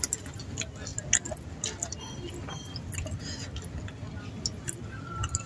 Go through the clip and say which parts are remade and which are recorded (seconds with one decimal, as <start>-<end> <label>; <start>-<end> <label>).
0.0-5.5 recorded